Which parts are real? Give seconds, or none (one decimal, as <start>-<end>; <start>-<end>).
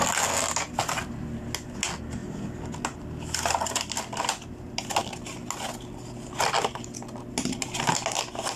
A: 0.0-8.6